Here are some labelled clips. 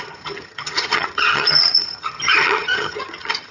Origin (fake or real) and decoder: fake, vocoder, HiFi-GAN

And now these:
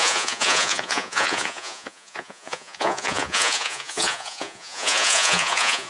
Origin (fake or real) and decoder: fake, vocoder, Vocos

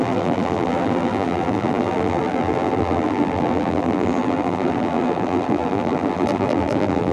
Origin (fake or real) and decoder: fake, vocoder, BigVGAN v2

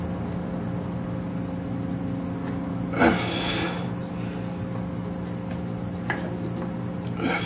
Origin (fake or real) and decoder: real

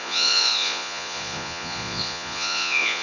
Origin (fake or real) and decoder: fake, vocoder, Vocos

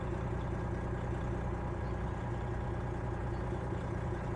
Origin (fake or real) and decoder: real